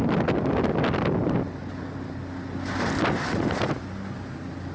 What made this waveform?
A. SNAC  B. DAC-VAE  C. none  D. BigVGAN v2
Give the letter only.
C